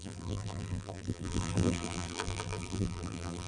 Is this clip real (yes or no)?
no